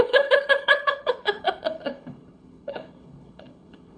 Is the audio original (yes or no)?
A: no